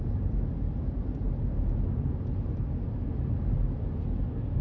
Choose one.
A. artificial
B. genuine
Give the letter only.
B